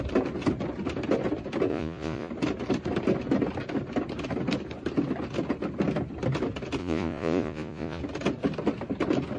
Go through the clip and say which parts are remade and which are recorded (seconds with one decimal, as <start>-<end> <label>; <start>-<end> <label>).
0.0-1.7 recorded; 1.7-2.3 remade; 2.3-6.8 recorded; 6.8-8.0 remade; 8.0-9.4 recorded